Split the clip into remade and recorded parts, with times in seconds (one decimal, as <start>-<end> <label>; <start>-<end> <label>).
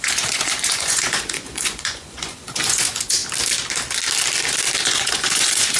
0.0-3.2 remade; 3.2-4.8 recorded; 4.8-5.8 remade